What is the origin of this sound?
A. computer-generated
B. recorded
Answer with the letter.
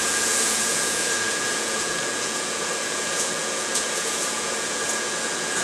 A